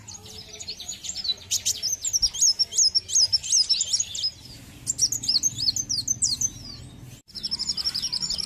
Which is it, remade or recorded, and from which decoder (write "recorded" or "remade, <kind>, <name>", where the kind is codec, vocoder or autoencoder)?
recorded